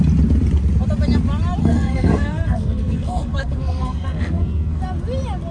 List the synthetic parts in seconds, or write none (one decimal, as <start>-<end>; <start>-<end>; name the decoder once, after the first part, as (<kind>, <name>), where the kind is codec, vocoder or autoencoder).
1.6-4.8 (codec, SNAC)